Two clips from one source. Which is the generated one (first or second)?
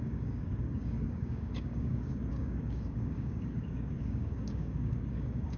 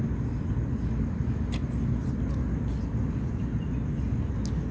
first